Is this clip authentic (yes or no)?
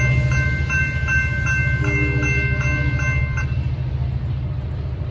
yes